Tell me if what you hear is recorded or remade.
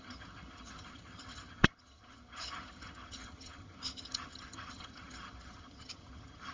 remade